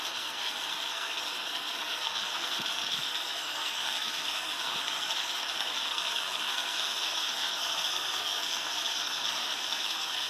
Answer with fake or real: fake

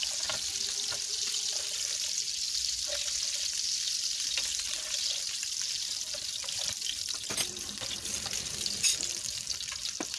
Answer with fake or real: real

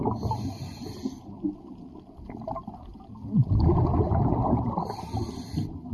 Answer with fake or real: real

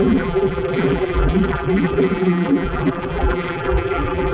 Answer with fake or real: fake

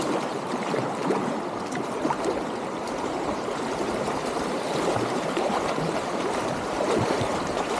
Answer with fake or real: fake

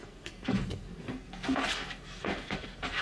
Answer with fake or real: fake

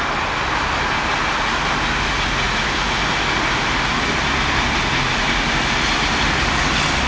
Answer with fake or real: real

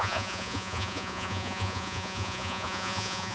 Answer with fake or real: fake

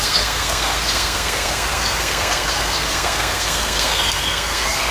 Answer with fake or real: fake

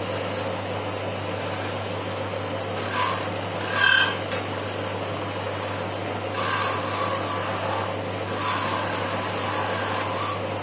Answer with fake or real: real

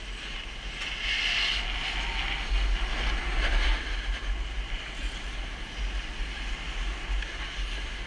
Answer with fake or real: real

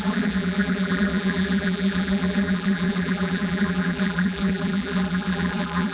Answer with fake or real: fake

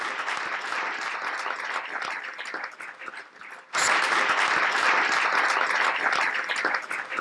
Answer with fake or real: real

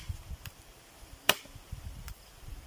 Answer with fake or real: fake